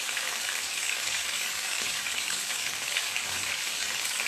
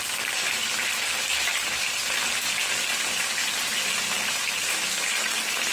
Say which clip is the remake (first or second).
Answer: first